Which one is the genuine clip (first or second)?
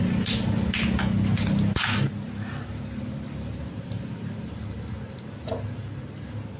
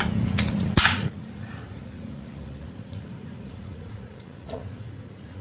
first